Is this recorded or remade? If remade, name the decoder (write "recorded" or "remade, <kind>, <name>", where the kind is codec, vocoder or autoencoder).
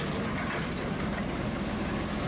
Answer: recorded